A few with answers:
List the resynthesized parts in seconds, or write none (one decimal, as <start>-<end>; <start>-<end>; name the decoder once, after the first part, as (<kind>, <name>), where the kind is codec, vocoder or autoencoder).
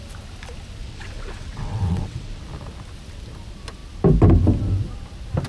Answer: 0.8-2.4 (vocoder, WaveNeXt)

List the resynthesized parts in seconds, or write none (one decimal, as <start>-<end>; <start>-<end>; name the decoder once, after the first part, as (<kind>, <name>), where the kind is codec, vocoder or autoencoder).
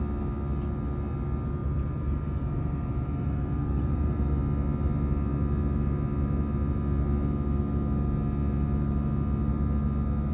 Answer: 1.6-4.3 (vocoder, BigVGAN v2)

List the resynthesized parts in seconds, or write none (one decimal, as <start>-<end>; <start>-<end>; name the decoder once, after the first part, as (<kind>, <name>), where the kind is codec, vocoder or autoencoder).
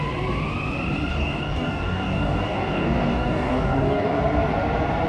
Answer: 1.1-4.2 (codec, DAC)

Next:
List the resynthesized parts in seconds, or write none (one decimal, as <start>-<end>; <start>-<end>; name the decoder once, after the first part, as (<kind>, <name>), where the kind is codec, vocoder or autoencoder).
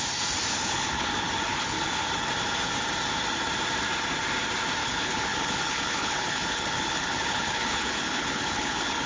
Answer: 0.5-1.1 (codec, HILCodec); 1.5-2.1; 4.8-9.1